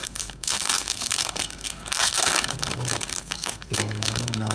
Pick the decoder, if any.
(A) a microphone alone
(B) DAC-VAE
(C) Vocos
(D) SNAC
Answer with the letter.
D